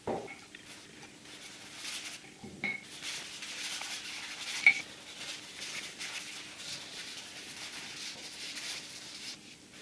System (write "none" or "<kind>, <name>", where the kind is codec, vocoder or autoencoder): none